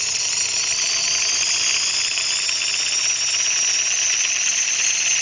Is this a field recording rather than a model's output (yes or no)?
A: yes